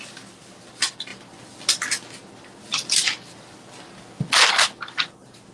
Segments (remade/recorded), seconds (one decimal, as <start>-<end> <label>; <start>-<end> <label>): 0.0-5.5 recorded